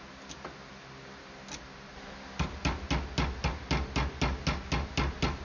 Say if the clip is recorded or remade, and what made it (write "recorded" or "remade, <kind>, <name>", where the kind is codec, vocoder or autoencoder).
recorded